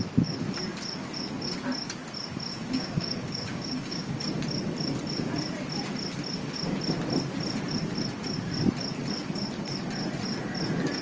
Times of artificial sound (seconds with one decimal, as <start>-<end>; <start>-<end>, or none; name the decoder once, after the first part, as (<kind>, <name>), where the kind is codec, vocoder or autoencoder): 2.5-4.2 (codec, DAC)

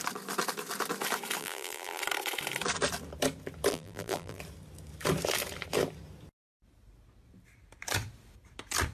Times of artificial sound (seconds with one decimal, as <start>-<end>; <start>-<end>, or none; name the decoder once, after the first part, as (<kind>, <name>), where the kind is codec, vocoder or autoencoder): 1.4-2.0 (vocoder, BigVGAN v2); 3.7-4.4

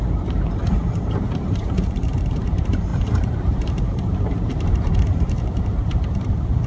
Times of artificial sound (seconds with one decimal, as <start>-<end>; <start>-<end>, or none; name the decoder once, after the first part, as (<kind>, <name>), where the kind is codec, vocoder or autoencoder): 0.0-6.7 (vocoder, BigVGAN v2)

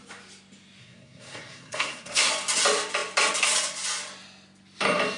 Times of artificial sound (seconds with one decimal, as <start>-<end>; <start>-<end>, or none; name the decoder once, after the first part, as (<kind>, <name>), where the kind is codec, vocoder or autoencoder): 0.8-2.3 (codec, SNAC)

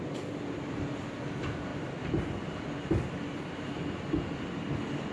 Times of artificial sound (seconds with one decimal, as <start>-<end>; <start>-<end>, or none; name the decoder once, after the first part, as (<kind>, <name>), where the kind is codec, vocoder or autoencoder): none

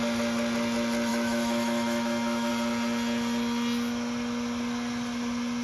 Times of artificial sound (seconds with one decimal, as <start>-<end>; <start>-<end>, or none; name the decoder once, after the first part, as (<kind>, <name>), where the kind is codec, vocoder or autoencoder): 1.1-2.5 (autoencoder, DAC-VAE)

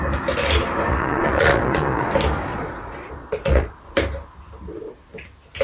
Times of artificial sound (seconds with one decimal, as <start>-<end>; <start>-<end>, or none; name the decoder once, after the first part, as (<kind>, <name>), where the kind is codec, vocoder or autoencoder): 0.9-2.1 (vocoder, Vocos); 2.5-3.7

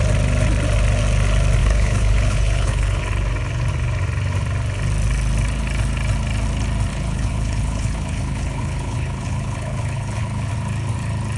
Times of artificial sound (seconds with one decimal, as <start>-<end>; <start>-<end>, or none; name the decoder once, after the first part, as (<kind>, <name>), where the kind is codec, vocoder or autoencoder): 1.6-3.0 (codec, HILCodec); 6.9-10.5